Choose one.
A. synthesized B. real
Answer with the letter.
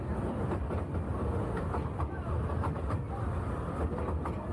A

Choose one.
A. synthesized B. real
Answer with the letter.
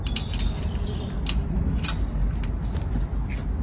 B